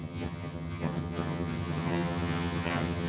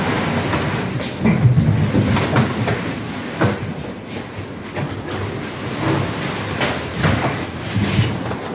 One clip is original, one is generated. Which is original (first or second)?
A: second